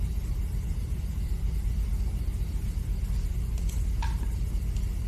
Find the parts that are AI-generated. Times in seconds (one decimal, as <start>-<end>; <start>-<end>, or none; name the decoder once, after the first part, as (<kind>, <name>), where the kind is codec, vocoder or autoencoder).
none